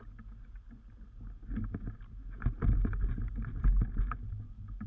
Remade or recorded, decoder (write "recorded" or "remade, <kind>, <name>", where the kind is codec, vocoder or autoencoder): recorded